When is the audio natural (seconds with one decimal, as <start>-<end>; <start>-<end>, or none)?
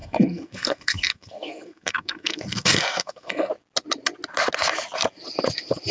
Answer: 3.5-5.9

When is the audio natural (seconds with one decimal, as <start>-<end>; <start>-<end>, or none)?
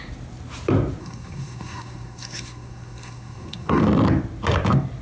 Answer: 0.0-1.0; 3.8-5.0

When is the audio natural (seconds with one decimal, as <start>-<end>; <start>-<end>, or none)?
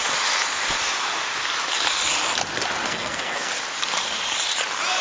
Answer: 0.0-2.8; 3.5-5.0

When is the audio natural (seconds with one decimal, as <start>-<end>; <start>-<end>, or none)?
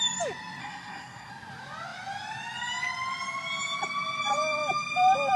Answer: 0.0-0.6; 1.3-5.4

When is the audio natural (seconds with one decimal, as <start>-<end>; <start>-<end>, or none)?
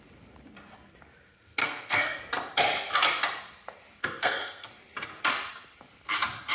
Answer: 0.0-1.6; 2.2-4.0; 4.7-6.5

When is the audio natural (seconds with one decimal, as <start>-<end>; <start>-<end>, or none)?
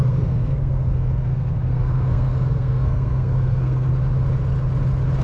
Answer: 3.9-5.2